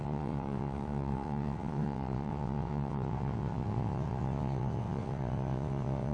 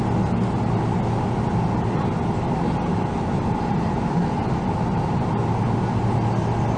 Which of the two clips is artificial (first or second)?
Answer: first